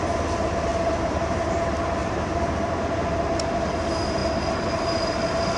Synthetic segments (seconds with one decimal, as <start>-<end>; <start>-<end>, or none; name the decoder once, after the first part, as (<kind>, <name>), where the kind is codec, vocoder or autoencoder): 0.7-1.5 (vocoder, BigVGAN v2); 2.0-3.0